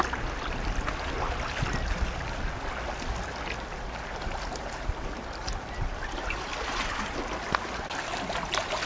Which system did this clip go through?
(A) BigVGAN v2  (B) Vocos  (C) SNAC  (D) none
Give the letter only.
D